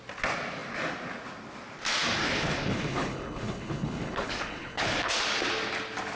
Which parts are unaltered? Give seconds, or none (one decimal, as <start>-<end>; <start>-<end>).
0.0-2.2; 5.1-6.2